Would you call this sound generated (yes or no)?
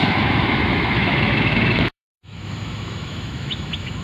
yes